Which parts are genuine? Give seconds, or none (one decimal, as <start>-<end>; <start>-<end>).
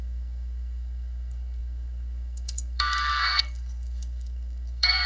none